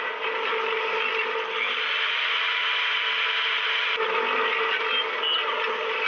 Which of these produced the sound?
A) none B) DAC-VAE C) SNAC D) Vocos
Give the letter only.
A